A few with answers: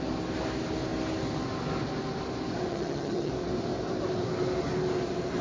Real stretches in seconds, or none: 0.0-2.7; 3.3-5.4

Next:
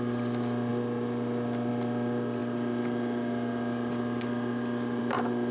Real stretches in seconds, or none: 0.0-5.5

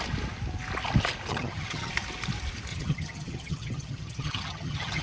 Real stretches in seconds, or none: 0.0-1.3; 1.9-2.7

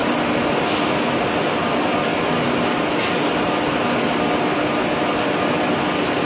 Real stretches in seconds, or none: 0.0-6.2

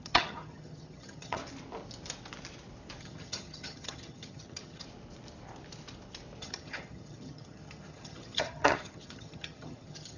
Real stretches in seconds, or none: 1.4-3.0; 4.8-6.4